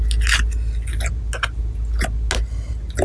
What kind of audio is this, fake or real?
real